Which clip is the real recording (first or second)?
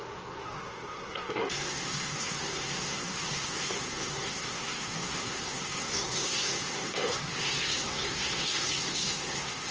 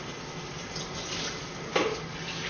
second